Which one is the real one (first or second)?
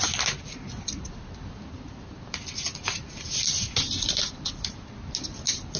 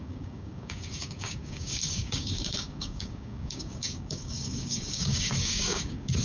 first